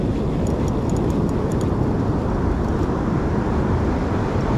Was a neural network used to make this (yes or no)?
no